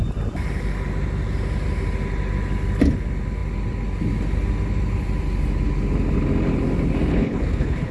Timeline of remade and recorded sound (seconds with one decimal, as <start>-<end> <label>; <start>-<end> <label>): 0.0-7.1 recorded; 7.1-7.9 remade